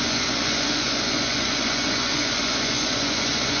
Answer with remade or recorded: remade